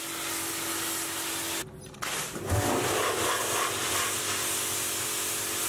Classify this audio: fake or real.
real